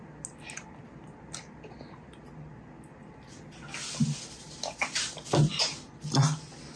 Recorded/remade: recorded